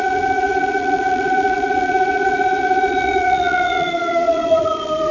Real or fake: fake